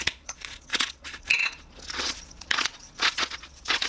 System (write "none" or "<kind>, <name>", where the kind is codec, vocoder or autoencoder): vocoder, Vocos